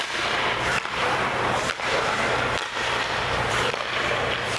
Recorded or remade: remade